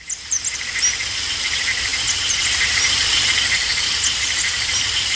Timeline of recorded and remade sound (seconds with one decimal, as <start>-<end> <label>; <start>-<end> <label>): 0.0-5.2 recorded